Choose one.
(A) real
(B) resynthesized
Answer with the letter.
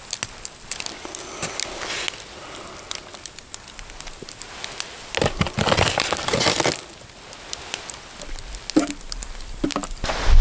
A